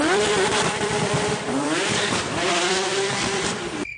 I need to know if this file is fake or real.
fake